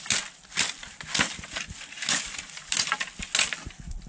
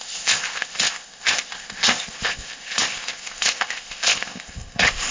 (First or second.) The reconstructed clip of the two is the second